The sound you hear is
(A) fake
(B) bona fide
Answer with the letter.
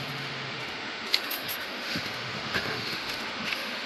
A